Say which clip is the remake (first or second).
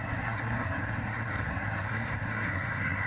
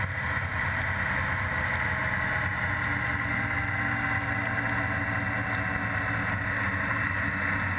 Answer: first